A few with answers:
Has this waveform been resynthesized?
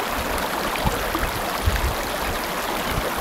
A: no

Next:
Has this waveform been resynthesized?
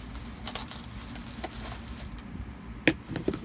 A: no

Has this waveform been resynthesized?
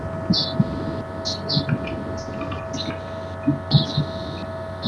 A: no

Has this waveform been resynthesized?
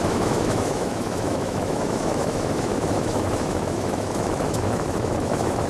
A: yes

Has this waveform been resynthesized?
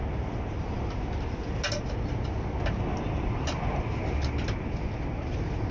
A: no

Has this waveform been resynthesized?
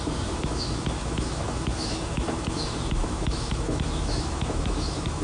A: yes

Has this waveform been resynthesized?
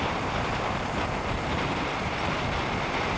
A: no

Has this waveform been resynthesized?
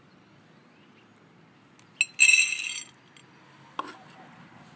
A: no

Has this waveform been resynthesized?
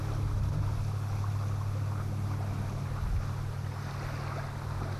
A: no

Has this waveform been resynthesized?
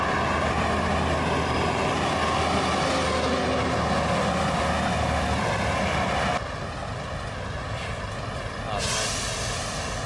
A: no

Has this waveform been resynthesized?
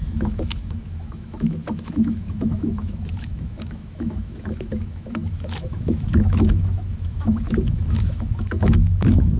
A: yes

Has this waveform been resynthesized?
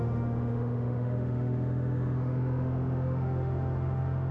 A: yes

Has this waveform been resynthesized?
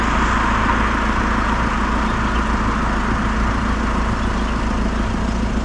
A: no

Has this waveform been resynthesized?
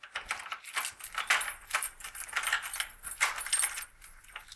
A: no